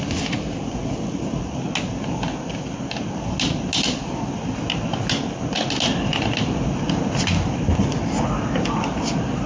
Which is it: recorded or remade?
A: recorded